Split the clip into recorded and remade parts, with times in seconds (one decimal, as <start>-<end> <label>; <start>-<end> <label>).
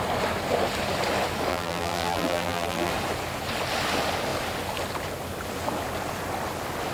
0.0-1.5 recorded; 1.5-2.9 remade; 2.9-6.9 recorded